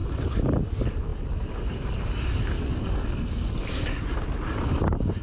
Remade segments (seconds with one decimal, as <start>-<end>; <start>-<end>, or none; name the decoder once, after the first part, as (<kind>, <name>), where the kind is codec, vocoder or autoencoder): 2.8-3.5 (codec, SNAC)